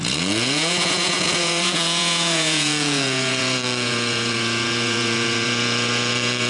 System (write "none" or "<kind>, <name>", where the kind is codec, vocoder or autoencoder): vocoder, Vocos